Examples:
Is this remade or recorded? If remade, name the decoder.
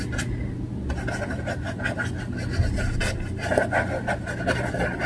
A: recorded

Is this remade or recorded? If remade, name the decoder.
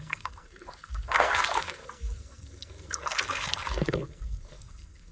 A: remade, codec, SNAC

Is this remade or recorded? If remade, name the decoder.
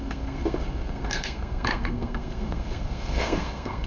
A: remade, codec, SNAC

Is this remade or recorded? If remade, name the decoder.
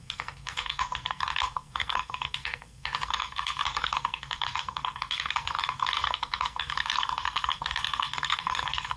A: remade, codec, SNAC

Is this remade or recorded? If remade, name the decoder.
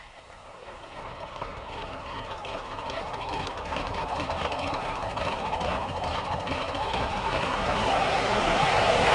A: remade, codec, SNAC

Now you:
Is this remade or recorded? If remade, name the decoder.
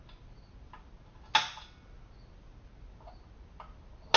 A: recorded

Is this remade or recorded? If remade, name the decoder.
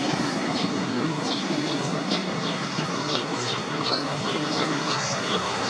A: remade, codec, SNAC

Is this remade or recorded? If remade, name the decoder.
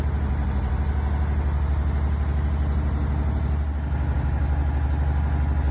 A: recorded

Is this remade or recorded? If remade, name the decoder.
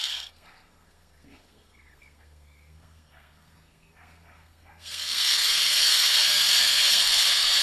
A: remade, codec, SNAC